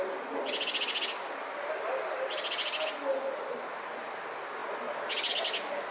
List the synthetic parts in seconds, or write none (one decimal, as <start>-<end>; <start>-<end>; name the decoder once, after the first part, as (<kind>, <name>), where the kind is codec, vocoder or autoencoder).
none